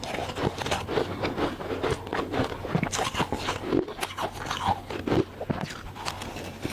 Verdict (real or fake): real